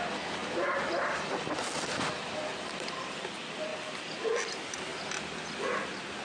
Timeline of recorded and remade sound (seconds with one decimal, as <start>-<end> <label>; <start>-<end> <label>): 0.0-6.2 recorded